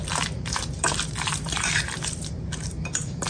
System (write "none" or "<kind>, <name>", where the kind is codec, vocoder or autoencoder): vocoder, BigVGAN v2